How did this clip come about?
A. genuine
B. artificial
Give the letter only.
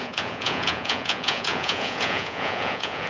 B